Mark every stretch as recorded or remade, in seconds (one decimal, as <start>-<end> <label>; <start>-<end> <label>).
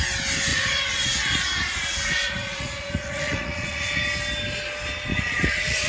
0.0-0.5 recorded; 0.5-4.0 remade; 4.0-5.1 recorded; 5.1-5.9 remade